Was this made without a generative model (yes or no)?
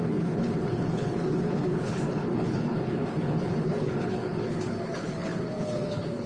no